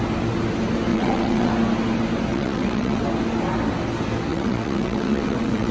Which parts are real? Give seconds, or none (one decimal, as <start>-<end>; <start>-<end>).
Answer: 0.0-0.9; 1.5-2.3; 3.0-4.3